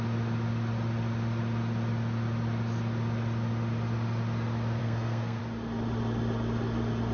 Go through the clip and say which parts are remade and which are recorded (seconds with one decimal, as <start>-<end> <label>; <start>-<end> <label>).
0.0-4.8 recorded; 4.8-5.4 remade; 5.4-7.1 recorded